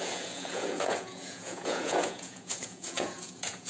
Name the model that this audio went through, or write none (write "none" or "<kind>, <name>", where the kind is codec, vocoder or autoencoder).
vocoder, Vocos